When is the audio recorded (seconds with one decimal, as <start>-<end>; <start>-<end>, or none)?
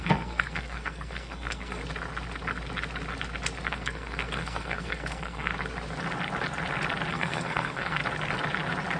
1.8-3.7; 5.5-7.1; 8.0-9.0